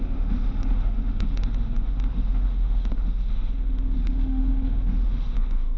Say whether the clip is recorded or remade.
remade